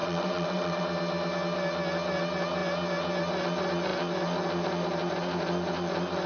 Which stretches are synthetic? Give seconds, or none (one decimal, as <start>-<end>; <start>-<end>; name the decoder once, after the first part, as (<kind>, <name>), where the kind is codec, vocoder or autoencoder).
0.0-0.8 (vocoder, WaveNeXt)